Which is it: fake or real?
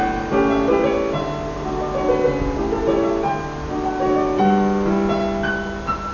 real